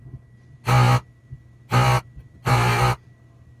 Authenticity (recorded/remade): recorded